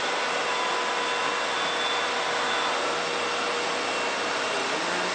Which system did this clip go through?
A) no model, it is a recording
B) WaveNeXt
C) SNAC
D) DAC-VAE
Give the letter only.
A